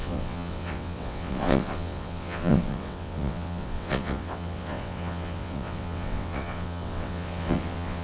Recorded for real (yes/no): no